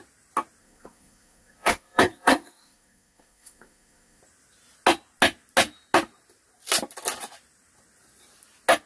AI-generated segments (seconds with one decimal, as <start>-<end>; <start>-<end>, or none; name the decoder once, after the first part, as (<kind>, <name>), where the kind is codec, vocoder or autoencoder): 0.6-4.2 (codec, SNAC)